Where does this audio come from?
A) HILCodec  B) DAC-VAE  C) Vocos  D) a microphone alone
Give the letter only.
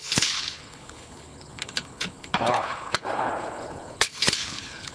A